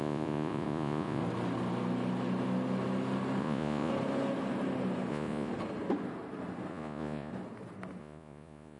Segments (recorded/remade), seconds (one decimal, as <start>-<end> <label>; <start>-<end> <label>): 0.0-1.2 remade; 1.2-3.4 recorded; 3.4-3.9 remade; 3.9-5.1 recorded; 5.1-5.5 remade; 5.5-6.7 recorded; 6.7-7.3 remade; 7.3-8.0 recorded; 8.0-8.8 remade